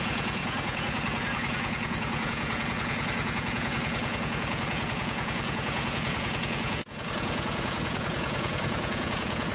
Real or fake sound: fake